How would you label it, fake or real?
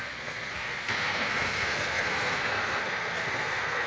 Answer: fake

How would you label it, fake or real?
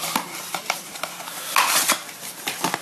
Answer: real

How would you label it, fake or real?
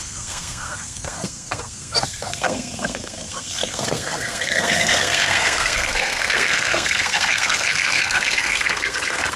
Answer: fake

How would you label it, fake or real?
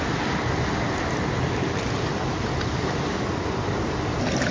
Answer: real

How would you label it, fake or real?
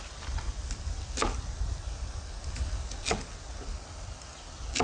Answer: real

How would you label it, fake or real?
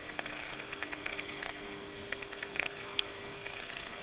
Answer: fake